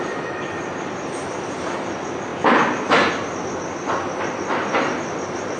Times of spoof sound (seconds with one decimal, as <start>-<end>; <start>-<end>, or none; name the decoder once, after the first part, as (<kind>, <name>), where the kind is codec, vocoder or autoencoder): none